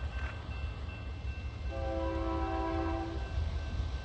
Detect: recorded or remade recorded